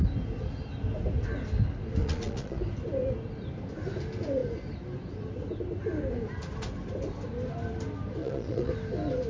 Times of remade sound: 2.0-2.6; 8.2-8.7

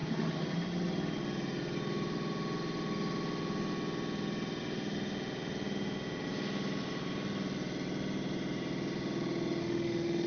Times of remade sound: 9.6-10.3

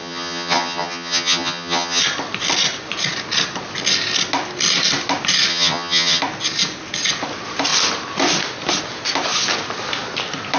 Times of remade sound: 0.0-2.0; 5.5-6.2